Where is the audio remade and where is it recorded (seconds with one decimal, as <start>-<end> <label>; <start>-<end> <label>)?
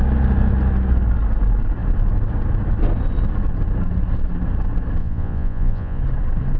0.0-5.0 recorded; 5.0-6.0 remade; 6.0-6.6 recorded